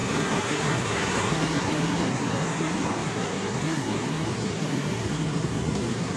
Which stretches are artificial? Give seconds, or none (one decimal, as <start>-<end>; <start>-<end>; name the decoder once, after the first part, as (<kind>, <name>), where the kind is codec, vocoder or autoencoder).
0.0-6.2 (codec, SNAC)